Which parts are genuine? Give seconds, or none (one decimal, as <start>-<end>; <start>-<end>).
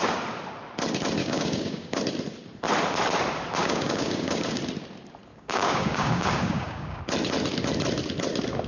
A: 0.0-1.2; 2.0-3.6; 4.6-5.3; 7.0-8.7